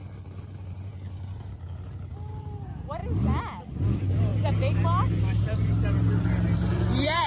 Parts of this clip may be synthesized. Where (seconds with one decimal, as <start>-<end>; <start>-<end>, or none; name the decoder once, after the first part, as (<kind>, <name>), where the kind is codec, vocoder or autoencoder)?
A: 0.0-3.0 (vocoder, BigVGAN v2); 3.7-4.3; 5.4-7.3